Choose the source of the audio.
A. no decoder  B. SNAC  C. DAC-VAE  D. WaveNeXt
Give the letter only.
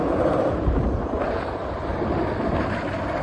A